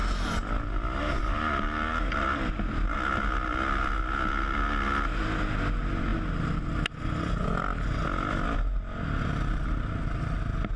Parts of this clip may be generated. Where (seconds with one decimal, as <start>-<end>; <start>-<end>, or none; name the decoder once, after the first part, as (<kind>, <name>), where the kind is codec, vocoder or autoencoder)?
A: none